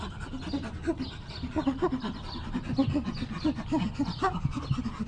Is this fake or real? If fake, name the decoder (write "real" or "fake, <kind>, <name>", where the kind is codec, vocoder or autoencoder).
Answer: real